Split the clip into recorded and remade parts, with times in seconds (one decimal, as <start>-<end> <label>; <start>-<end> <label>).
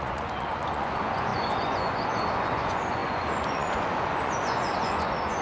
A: 0.0-5.4 remade